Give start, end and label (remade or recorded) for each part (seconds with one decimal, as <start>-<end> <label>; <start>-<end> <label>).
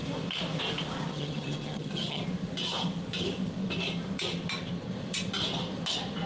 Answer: 0.0-1.1 recorded; 1.1-2.2 remade; 2.2-6.3 recorded